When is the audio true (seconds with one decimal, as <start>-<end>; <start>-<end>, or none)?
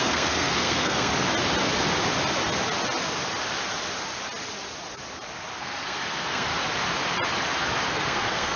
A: 1.1-5.6; 6.5-7.9